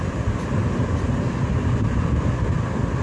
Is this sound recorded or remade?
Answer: recorded